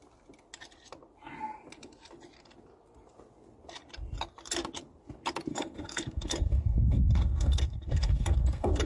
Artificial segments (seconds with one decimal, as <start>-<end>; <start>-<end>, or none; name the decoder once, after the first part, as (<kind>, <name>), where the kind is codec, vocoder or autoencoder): 5.5-8.9 (codec, SNAC)